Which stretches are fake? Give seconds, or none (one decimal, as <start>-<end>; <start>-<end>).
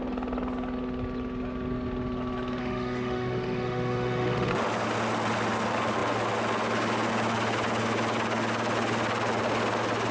2.6-4.5